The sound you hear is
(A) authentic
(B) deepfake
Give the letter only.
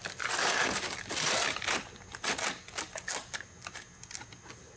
A